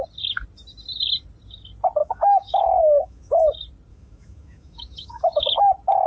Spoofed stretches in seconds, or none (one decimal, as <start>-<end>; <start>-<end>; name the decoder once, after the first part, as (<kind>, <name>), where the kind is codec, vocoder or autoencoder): 2.0-3.4 (autoencoder, DAC-VAE); 3.9-5.6

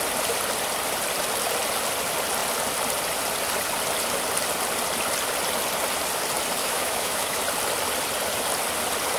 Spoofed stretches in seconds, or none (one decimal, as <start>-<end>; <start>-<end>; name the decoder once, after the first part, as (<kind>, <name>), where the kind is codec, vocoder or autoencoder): 6.6-7.4 (autoencoder, DAC-VAE)